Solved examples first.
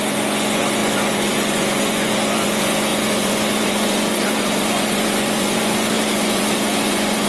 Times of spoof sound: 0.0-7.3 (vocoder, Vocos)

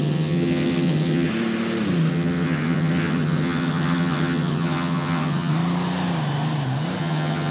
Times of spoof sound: 0.0-1.3 (vocoder, HiFi-GAN); 2.1-5.5; 7.0-7.5

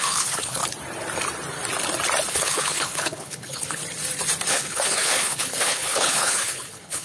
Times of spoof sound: 0.0-0.6 (codec, HILCodec); 2.3-3.8; 4.5-7.0